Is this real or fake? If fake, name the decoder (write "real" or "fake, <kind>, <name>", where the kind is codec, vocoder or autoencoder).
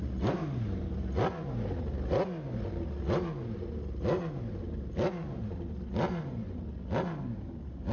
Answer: real